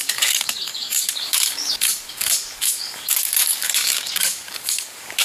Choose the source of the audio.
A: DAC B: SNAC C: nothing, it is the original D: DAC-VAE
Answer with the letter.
A